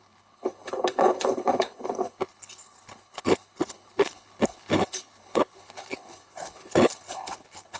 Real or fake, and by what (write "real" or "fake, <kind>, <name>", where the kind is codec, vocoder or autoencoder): fake, codec, HILCodec